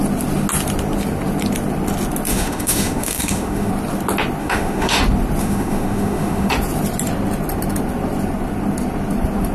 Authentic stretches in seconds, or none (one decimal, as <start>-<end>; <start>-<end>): 0.0-2.3; 3.7-4.4; 5.0-5.4; 6.5-9.5